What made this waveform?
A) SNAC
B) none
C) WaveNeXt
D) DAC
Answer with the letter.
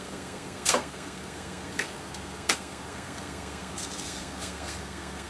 A